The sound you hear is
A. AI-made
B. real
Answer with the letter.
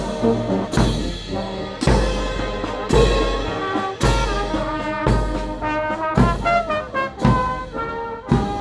B